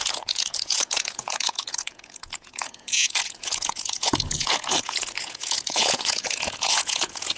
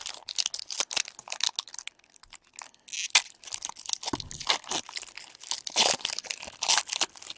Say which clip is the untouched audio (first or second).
second